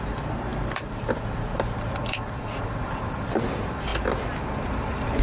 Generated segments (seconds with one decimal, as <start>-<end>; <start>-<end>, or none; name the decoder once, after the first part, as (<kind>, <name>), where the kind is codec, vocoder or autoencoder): 0.0-3.9 (vocoder, BigVGAN v2); 4.7-5.2